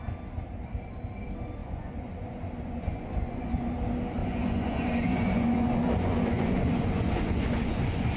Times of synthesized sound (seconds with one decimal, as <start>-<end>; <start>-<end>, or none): 1.6-3.7; 4.2-8.2